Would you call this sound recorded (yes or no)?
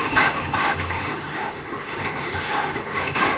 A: no